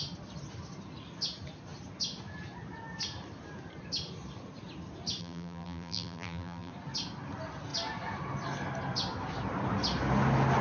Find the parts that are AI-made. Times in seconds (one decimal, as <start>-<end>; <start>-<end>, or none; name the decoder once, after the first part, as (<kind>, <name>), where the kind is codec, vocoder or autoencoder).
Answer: 5.2-6.7 (vocoder, BigVGAN v2)